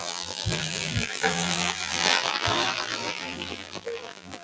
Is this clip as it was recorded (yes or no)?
no